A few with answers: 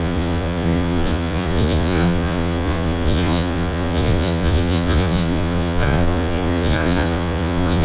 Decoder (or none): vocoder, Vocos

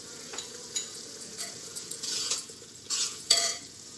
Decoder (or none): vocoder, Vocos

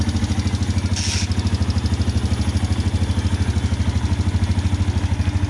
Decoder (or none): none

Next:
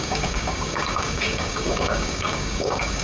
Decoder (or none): codec, DAC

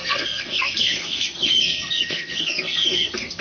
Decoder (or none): codec, SNAC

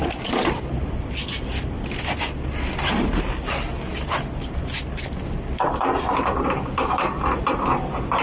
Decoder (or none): none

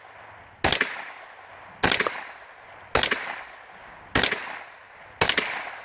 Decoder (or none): none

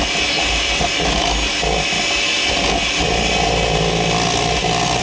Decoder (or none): none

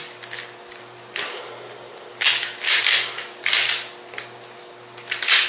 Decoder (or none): vocoder, BigVGAN v2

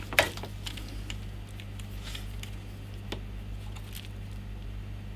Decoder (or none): none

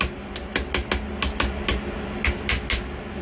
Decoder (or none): none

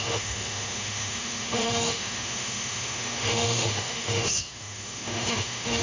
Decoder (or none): autoencoder, DAC-VAE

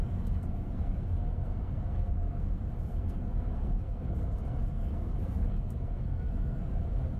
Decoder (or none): codec, SNAC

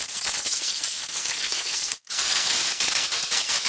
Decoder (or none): codec, SNAC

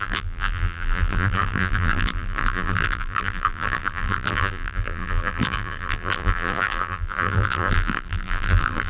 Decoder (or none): vocoder, BigVGAN v2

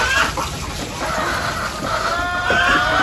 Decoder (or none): none